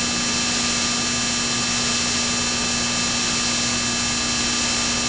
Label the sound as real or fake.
real